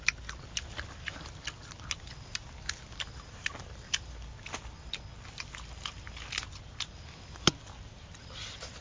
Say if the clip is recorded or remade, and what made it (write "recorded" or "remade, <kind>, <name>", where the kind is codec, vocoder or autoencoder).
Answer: recorded